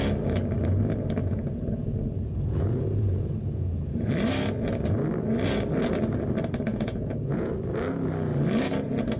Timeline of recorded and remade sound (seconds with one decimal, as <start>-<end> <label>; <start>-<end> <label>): 0.0-1.2 recorded; 1.2-4.1 remade; 4.1-6.7 recorded; 6.7-7.5 remade; 7.5-9.2 recorded

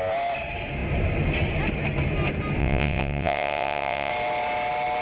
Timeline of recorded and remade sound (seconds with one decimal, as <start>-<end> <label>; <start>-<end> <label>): 0.0-2.6 recorded; 2.6-4.1 remade; 4.1-5.0 recorded

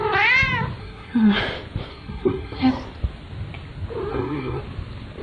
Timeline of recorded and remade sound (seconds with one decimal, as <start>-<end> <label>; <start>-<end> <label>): 0.0-0.8 recorded; 0.8-1.4 remade; 1.4-1.9 recorded; 1.9-2.7 remade; 2.7-4.1 recorded; 4.1-4.6 remade; 4.6-5.2 recorded

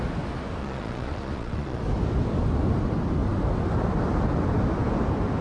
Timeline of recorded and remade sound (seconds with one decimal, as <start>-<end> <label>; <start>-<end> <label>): 0.0-0.6 recorded; 0.6-1.8 remade; 1.8-5.4 recorded

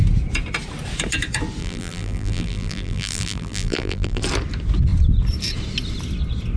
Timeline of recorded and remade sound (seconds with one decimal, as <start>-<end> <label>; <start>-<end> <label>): 0.0-1.6 recorded; 1.6-4.2 remade; 4.2-6.6 recorded

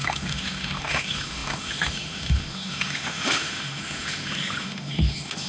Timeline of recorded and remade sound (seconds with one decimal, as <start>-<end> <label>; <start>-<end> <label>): 0.0-5.5 remade

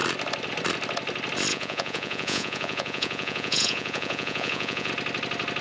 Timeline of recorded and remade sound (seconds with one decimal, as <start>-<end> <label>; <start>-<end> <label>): 0.0-1.5 recorded; 1.5-4.9 remade; 4.9-5.6 recorded